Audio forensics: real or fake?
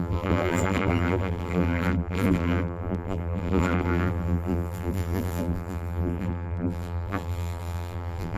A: fake